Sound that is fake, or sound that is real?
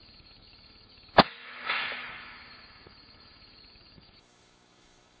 fake